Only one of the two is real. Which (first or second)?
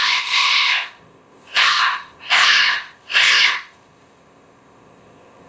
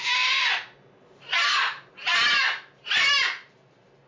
second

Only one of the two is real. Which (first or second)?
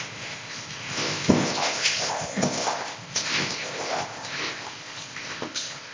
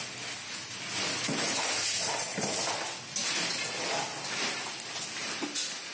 second